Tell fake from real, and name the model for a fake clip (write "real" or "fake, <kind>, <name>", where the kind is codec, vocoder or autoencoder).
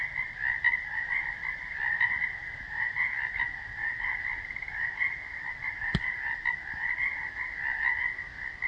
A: real